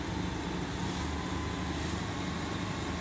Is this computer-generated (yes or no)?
no